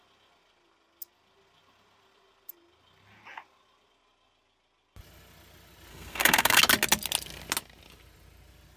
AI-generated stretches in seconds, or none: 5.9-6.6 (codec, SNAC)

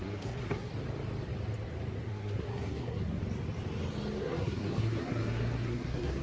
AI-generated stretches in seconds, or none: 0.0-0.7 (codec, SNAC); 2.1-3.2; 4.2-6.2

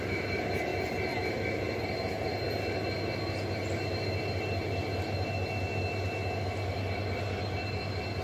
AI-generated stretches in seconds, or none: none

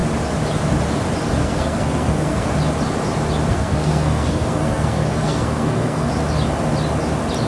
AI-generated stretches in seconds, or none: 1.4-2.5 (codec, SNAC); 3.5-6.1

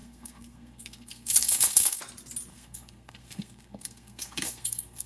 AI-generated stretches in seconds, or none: 0.0-2.0 (codec, SNAC); 2.5-5.1

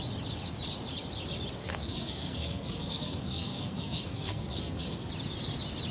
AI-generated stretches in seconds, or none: 1.6-5.1 (codec, SNAC)

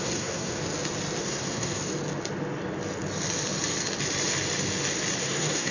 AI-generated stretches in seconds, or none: 0.0-0.6 (codec, SNAC); 1.2-1.8; 5.2-5.7

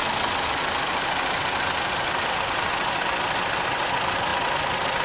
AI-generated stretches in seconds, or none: none